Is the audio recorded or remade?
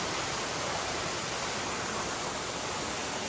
remade